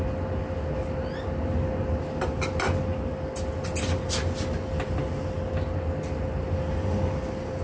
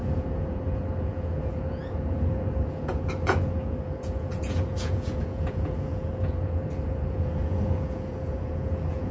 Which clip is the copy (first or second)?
second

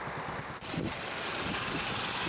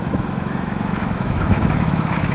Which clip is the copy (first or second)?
second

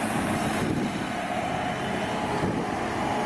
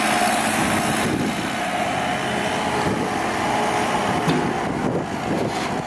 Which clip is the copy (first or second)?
first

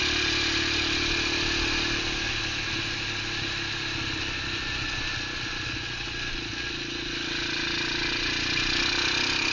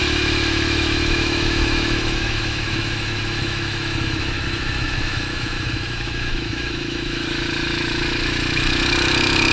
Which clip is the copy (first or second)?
second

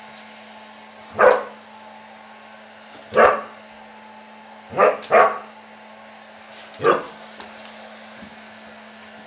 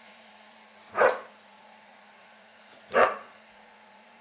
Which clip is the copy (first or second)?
second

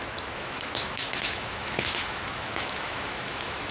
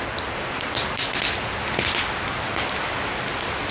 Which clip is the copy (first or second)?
first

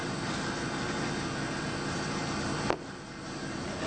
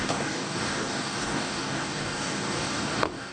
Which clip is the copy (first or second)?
second